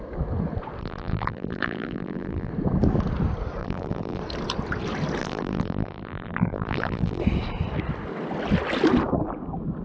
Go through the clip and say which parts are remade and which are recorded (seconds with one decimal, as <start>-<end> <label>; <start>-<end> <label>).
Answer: 0.0-0.8 recorded; 0.8-2.5 remade; 2.5-3.6 recorded; 3.6-4.2 remade; 4.2-5.2 recorded; 5.2-7.2 remade; 7.2-9.8 recorded